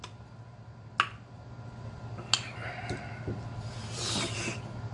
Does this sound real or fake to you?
real